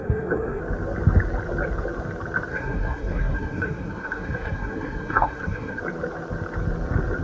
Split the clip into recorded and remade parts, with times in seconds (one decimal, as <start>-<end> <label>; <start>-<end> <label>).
0.0-0.6 remade; 0.6-2.5 recorded; 2.5-5.8 remade; 5.8-7.2 recorded